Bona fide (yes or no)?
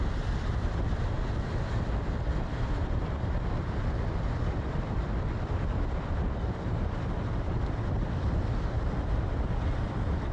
no